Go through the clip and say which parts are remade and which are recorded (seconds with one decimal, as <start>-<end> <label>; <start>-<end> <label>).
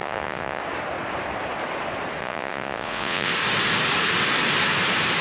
0.0-0.6 remade; 0.6-2.2 recorded; 2.2-3.3 remade; 3.3-5.2 recorded